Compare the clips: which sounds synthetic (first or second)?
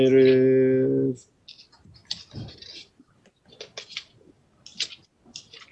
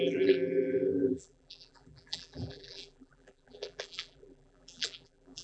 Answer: second